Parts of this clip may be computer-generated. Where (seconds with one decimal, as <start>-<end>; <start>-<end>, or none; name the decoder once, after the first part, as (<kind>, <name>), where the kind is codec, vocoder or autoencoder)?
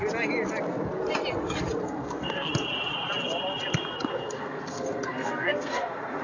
1.8-2.5 (codec, SNAC); 4.1-6.2